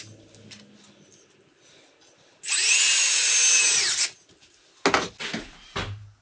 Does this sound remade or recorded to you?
recorded